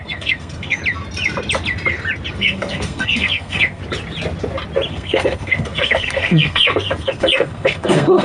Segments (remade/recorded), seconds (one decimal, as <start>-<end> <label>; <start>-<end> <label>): 0.0-0.8 remade; 0.8-2.3 recorded; 2.3-3.8 remade; 3.8-4.9 recorded; 4.9-8.2 remade